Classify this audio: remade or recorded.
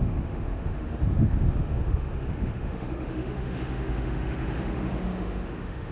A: remade